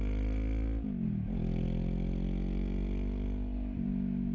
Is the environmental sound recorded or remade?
recorded